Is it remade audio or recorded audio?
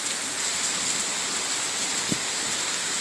recorded